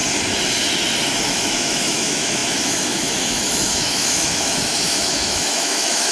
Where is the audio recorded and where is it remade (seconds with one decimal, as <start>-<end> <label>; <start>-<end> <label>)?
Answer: 0.0-1.2 recorded; 1.2-6.1 remade